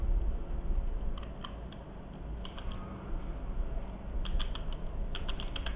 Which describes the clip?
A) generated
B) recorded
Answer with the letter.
B